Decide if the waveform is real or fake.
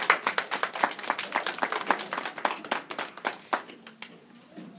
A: real